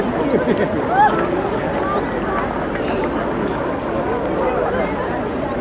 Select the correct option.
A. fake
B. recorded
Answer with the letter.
B